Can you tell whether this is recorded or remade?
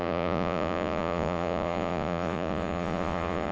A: remade